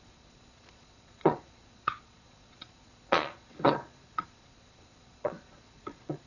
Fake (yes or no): yes